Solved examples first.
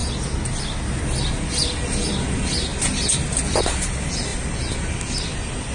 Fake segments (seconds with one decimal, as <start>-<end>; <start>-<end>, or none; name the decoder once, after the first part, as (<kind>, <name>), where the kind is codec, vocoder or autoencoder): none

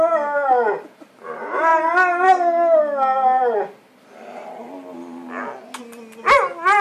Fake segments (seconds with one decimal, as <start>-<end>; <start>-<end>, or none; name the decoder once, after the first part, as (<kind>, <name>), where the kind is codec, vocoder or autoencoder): none

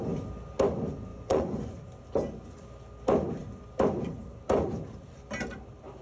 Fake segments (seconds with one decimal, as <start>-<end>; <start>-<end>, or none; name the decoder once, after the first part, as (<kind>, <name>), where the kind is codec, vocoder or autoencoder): 1.1-1.8 (vocoder, Vocos)